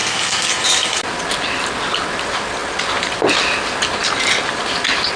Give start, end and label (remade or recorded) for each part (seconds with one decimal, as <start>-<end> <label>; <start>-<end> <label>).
0.0-0.5 remade; 0.5-5.2 recorded